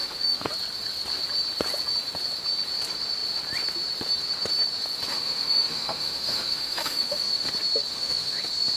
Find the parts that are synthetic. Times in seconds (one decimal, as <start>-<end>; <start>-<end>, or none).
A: 0.0-0.5; 5.1-7.5; 7.9-8.4